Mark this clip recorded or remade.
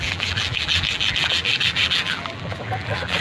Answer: remade